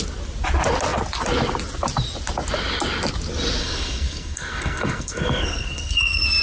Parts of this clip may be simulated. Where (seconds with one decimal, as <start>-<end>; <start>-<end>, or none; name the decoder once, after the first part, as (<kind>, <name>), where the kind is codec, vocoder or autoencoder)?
3.6-6.4 (codec, SNAC)